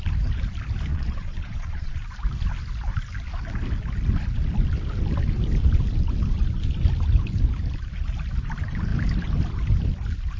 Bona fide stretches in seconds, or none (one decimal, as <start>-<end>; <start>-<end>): 0.0-0.9; 2.0-10.4